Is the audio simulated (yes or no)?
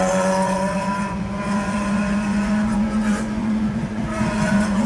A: yes